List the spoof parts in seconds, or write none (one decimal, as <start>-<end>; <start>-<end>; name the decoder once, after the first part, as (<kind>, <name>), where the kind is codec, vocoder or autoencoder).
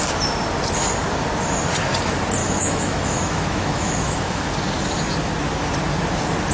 2.4-4.5 (autoencoder, DAC-VAE)